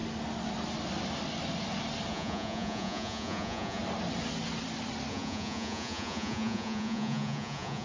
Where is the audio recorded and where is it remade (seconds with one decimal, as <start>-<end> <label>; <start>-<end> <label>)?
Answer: 0.0-2.1 recorded; 2.1-3.8 remade; 3.8-5.1 recorded; 5.1-7.8 remade

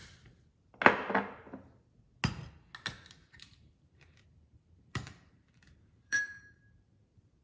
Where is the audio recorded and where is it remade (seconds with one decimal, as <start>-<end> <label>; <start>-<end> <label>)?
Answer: 0.0-3.2 recorded; 3.2-6.6 remade; 6.6-7.4 recorded

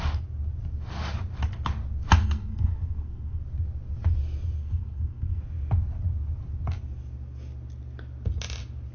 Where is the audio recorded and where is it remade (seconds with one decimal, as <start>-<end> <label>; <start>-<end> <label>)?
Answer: 0.0-2.2 recorded; 2.2-3.4 remade; 3.4-4.6 recorded; 4.6-5.4 remade; 5.4-8.9 recorded

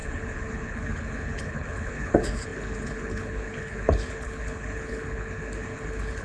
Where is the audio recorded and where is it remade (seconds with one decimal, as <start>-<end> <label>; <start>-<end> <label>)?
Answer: 0.0-6.2 remade